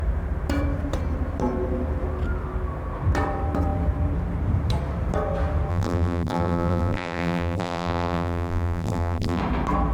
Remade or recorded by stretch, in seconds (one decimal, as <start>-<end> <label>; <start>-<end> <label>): 0.0-5.7 recorded; 5.7-9.4 remade; 9.4-9.9 recorded